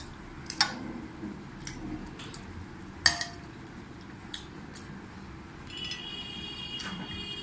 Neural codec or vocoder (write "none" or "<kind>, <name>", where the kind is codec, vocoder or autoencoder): none